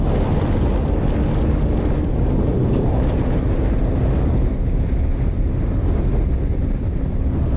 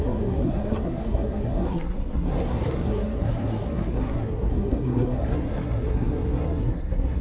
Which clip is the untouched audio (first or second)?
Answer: first